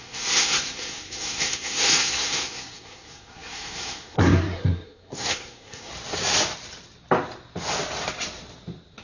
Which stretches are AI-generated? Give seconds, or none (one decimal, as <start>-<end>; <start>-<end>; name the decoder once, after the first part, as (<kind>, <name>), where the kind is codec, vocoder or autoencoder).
0.0-5.9 (codec, SNAC)